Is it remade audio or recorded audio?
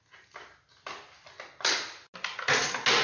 recorded